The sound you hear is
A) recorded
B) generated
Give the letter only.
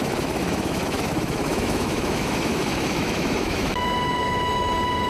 B